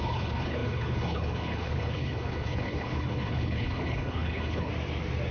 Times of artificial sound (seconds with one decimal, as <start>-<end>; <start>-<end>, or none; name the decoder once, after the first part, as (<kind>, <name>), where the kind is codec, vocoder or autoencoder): 0.0-4.7 (codec, HILCodec)